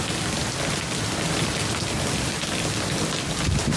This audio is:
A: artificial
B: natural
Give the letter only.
B